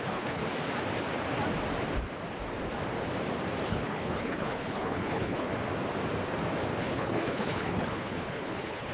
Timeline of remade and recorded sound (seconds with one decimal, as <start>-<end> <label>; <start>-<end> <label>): 0.0-0.4 remade; 0.4-3.7 recorded; 3.7-5.5 remade; 5.5-6.8 recorded; 6.8-8.9 remade